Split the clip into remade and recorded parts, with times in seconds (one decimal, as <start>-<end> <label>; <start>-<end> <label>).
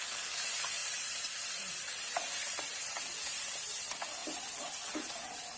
0.0-5.6 recorded